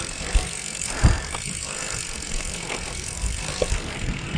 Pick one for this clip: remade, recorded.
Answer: remade